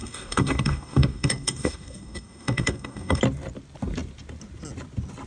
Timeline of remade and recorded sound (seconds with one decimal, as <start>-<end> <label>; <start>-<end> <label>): 0.0-3.2 remade; 3.2-5.3 recorded